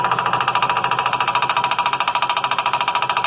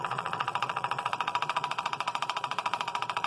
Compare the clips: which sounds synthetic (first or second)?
second